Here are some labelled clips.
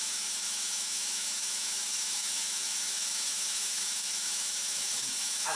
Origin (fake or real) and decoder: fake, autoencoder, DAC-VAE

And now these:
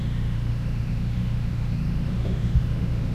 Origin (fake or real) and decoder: fake, autoencoder, DAC-VAE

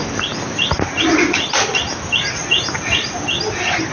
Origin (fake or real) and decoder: real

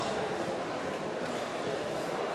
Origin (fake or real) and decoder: real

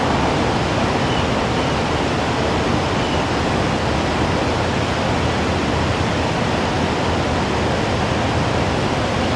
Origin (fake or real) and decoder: real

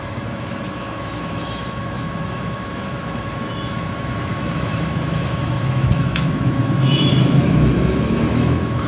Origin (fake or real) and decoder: fake, autoencoder, DAC-VAE